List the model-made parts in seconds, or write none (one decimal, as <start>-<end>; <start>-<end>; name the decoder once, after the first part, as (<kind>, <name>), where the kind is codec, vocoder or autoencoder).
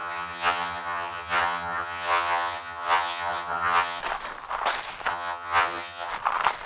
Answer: 0.0-4.0 (vocoder, HiFi-GAN); 5.1-6.1